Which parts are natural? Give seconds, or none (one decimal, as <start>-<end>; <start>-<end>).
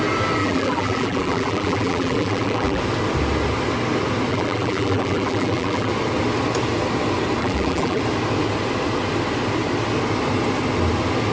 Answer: 0.0-0.4; 2.8-4.3; 5.9-7.4; 8.0-11.3